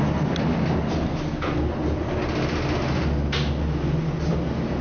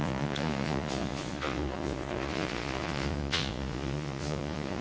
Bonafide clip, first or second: first